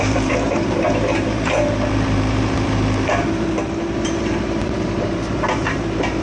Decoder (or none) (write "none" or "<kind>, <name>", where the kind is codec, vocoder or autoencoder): vocoder, BigVGAN v2